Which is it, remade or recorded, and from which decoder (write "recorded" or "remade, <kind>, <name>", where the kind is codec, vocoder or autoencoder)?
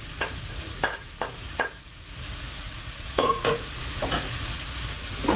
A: remade, vocoder, Vocos